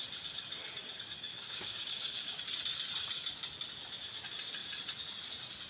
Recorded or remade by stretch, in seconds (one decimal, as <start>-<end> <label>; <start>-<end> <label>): 0.0-1.3 recorded; 1.3-2.4 remade; 2.4-5.7 recorded